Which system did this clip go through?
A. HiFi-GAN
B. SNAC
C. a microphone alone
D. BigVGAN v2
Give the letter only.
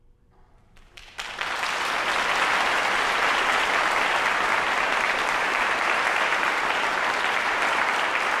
D